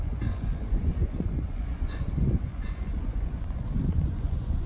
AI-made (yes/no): yes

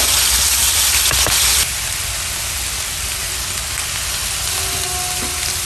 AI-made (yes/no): no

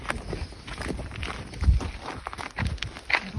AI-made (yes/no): no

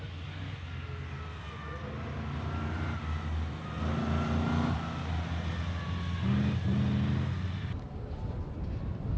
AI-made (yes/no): no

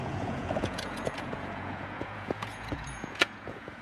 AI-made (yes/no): yes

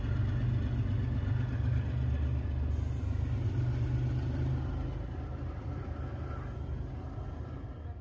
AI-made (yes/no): no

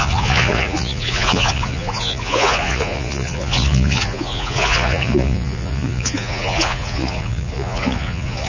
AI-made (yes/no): yes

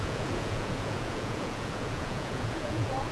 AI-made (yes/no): yes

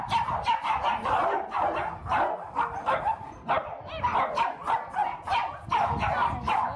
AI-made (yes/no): no